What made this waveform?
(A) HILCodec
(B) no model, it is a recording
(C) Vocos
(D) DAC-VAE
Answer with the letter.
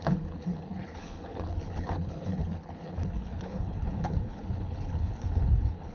A